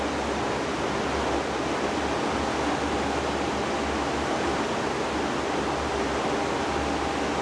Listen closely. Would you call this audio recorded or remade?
recorded